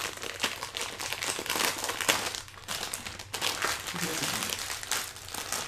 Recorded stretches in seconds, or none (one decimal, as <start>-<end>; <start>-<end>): 0.0-5.7